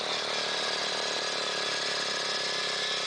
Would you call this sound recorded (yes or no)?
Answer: yes